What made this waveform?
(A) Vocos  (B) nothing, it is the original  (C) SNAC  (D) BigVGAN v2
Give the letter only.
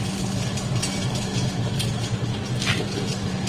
B